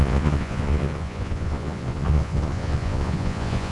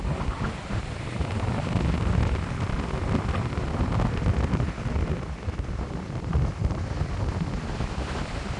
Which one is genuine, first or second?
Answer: second